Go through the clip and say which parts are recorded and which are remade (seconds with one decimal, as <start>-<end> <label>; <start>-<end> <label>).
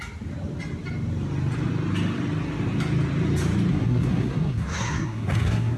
0.0-3.7 recorded; 3.7-5.8 remade